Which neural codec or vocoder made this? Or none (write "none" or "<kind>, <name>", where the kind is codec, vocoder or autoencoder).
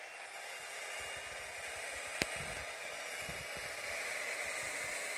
none